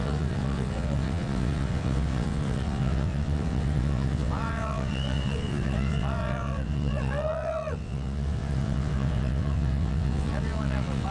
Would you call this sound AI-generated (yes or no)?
yes